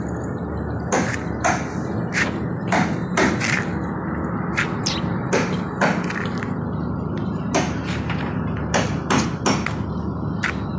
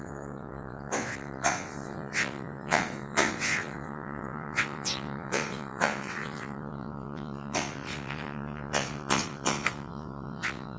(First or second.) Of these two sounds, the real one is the first